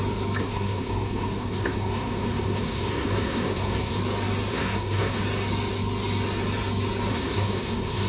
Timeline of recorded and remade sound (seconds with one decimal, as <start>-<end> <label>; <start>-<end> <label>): 0.0-0.4 recorded; 0.4-4.0 remade; 4.0-4.5 recorded; 4.5-5.2 remade; 5.2-7.1 recorded; 7.1-8.1 remade